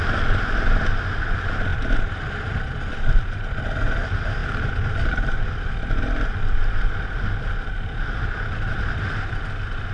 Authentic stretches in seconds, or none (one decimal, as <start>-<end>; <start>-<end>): 0.0-9.9